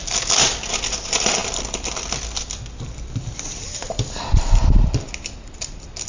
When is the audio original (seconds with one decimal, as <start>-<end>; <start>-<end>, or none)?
0.0-1.4; 5.1-6.1